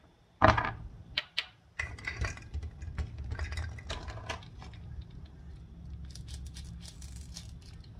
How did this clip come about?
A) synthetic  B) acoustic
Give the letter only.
B